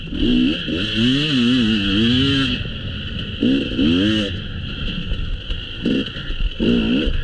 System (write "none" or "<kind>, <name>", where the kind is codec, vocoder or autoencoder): none